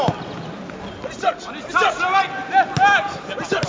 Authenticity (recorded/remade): recorded